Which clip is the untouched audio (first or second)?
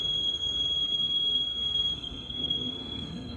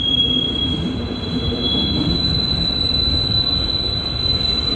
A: second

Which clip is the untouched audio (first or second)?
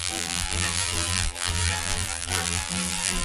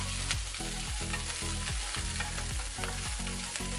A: second